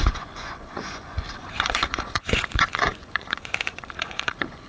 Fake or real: fake